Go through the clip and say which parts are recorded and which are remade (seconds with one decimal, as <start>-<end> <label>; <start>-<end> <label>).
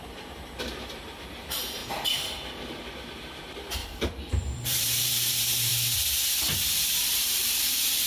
0.0-1.8 remade; 1.8-3.0 recorded; 3.0-5.7 remade; 5.7-6.9 recorded; 6.9-8.1 remade